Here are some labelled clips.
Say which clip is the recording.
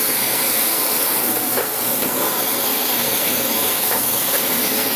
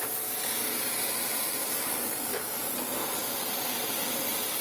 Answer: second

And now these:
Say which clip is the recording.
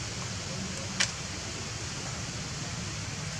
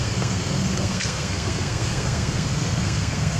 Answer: first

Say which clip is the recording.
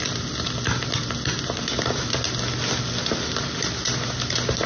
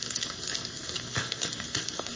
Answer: first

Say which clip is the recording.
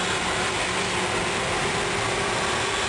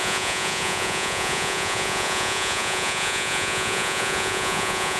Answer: first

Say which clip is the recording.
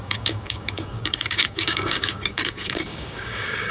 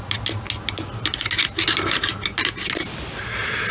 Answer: second